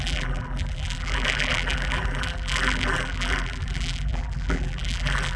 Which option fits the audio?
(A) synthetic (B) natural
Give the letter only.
A